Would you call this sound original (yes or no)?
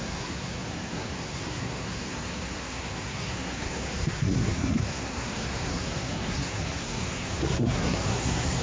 no